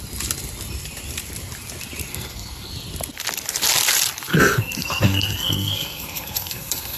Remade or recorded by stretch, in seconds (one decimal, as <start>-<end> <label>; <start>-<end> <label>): 0.0-2.1 recorded; 2.1-2.7 remade; 2.7-4.3 recorded; 4.3-7.0 remade